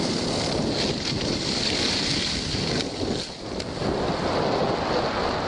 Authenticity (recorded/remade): recorded